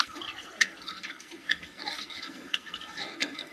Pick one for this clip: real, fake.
fake